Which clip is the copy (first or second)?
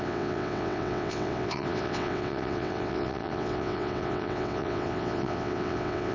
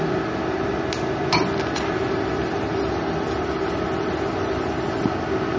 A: first